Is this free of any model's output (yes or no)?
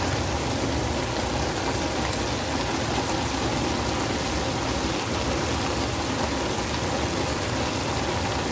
yes